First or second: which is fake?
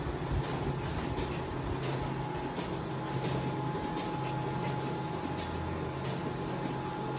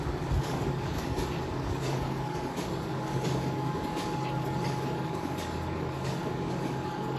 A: second